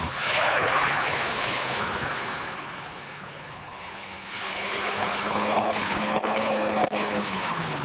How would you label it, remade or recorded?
remade